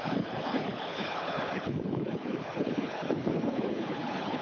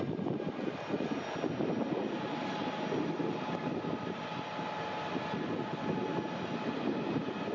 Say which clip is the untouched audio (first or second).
second